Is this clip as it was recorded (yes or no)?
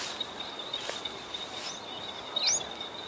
yes